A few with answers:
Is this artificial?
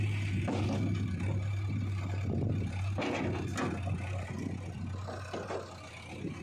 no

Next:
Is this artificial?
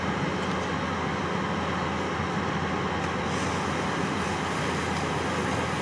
no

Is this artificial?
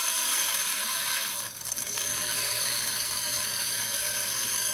yes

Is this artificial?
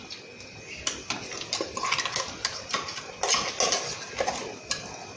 no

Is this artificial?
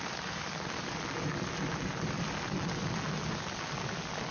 no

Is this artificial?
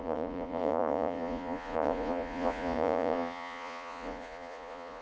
yes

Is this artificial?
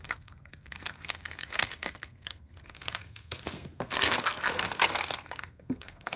yes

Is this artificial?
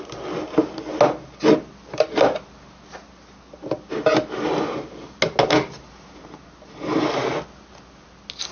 no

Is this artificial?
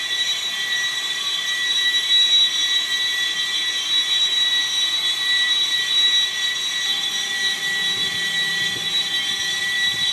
no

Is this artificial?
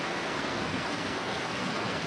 yes